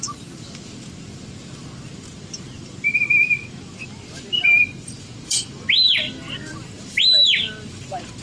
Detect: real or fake fake